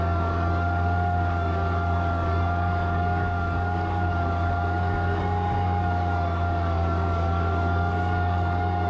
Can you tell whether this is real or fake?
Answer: fake